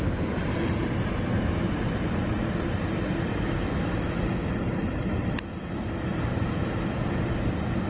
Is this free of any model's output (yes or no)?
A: yes